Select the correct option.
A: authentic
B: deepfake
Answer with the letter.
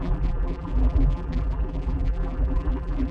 B